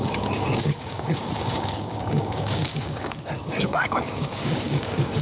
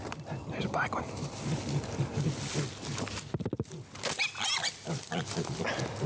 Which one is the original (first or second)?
second